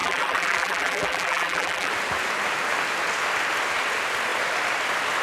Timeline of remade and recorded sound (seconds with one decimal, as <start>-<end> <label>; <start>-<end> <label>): 0.0-1.9 remade; 1.9-5.2 recorded